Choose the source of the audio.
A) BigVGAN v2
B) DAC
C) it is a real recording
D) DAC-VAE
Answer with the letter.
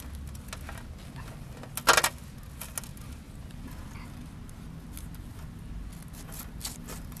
C